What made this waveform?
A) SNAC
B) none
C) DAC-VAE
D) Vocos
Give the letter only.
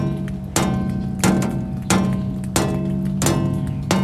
B